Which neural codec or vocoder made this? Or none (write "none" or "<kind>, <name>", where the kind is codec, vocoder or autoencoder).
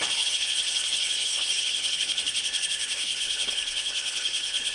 codec, HILCodec